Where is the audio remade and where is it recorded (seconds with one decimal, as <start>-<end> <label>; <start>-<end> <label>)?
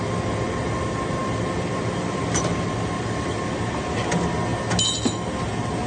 0.0-1.2 recorded; 1.2-3.4 remade; 3.4-5.9 recorded